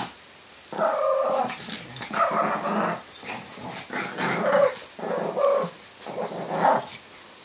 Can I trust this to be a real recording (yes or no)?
yes